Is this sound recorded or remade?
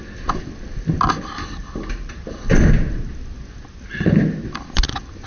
recorded